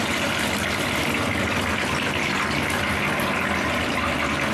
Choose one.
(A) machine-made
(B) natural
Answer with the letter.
B